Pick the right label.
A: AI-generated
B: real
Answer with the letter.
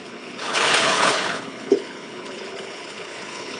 A